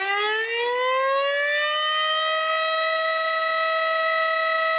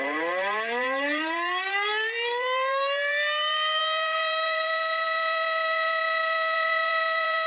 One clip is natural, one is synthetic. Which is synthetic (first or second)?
second